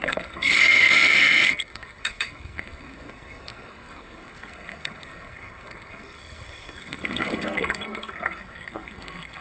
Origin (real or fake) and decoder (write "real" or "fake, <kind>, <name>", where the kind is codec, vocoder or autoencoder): fake, codec, SNAC